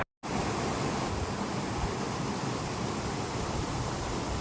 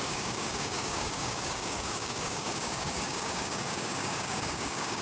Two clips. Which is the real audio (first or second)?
first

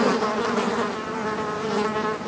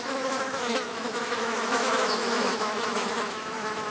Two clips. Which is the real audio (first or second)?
first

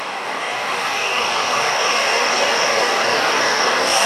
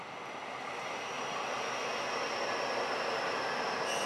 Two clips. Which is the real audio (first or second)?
second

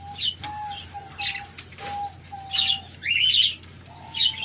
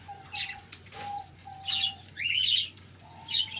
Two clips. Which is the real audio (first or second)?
first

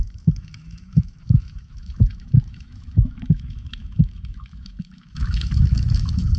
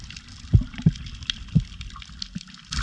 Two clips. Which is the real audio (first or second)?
second